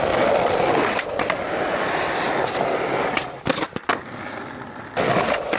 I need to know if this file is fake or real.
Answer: real